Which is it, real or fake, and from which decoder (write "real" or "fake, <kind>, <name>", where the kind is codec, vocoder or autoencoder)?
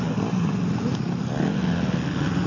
real